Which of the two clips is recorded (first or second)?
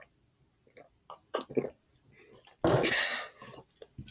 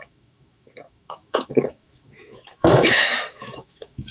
first